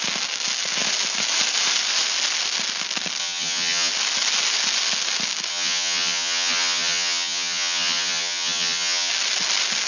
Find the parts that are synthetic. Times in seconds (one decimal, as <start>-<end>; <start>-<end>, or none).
3.2-3.9; 5.5-9.1